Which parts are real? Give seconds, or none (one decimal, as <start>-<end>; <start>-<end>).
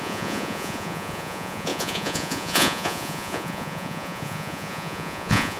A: none